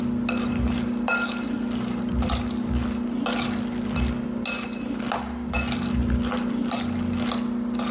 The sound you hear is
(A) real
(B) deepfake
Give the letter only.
A